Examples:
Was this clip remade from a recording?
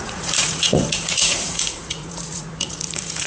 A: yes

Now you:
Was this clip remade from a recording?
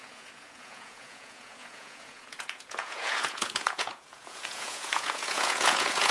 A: yes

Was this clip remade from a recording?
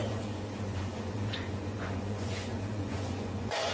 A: yes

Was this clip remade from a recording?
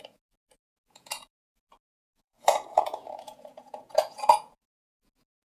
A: yes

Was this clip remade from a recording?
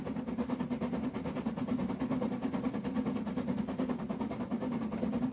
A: no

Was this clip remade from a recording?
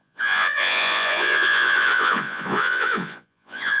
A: yes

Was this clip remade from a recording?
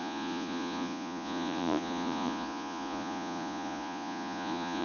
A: yes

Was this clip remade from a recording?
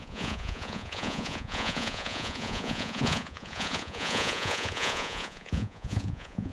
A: yes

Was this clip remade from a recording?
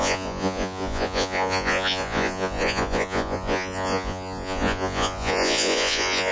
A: yes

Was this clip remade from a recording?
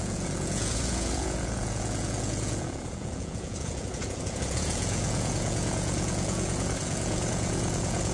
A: yes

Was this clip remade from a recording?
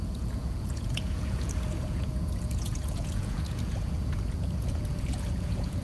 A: yes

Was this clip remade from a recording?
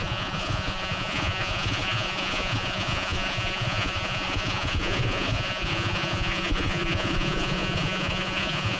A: yes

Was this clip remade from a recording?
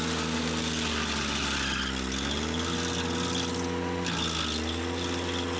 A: no